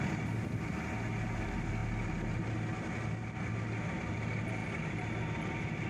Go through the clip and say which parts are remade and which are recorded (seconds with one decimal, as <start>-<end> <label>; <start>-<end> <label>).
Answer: 0.0-5.9 recorded